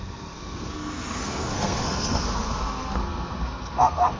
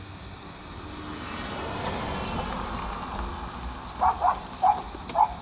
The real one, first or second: second